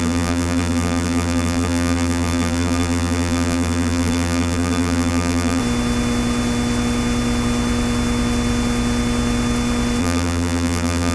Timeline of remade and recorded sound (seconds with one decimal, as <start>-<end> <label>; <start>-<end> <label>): 0.0-5.6 remade; 5.6-10.0 recorded; 10.0-11.1 remade